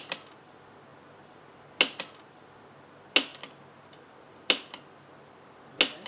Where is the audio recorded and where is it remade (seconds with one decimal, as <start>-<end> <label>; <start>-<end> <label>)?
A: 0.0-6.1 recorded